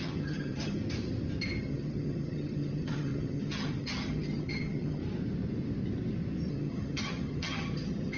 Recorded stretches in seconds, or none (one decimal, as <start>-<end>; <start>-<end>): 0.8-1.6; 5.0-6.5